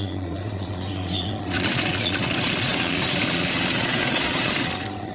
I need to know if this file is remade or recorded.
remade